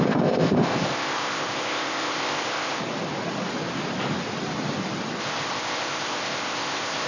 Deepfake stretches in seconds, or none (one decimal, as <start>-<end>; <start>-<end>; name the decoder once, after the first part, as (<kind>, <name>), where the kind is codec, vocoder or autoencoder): 0.0-2.8 (codec, ZipCodec); 5.2-7.1